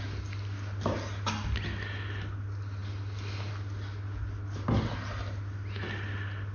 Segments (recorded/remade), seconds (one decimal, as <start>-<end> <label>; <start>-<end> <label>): 0.0-6.5 recorded